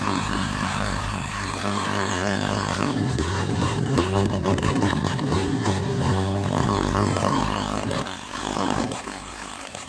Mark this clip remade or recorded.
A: remade